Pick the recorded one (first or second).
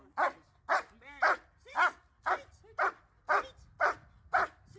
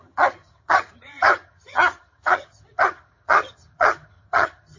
first